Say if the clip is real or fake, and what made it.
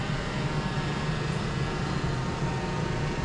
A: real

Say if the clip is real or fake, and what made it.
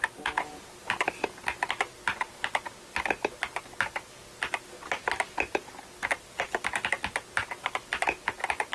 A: real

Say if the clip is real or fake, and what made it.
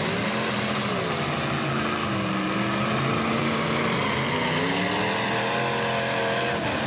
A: real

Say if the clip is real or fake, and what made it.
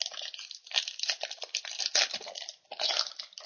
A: real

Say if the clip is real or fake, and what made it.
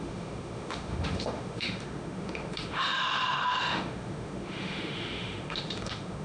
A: fake, autoencoder, DAC-VAE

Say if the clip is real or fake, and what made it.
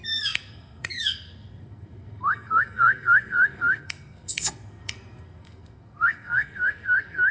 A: fake, codec, SNAC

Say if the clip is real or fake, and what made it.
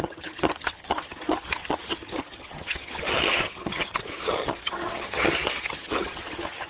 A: fake, vocoder, HiFi-GAN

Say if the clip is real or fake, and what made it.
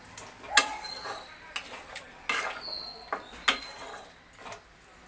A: real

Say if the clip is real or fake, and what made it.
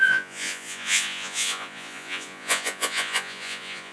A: fake, vocoder, Vocos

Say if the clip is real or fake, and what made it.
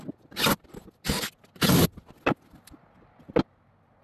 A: real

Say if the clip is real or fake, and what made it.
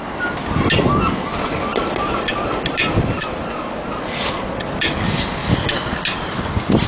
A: real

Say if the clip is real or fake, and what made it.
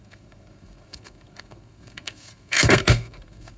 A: fake, codec, SNAC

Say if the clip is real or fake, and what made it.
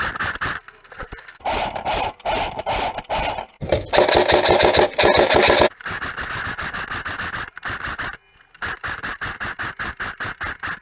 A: real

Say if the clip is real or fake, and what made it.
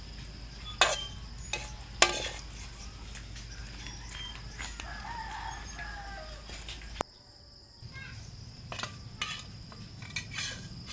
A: real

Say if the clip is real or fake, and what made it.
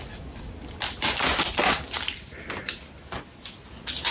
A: real